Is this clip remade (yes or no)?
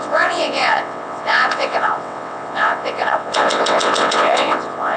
yes